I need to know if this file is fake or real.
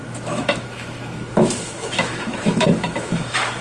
fake